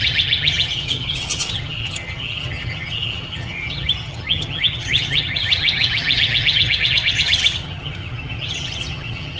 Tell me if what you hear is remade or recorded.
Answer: remade